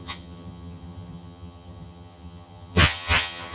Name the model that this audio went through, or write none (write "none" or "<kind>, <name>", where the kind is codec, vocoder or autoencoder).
vocoder, HiFi-GAN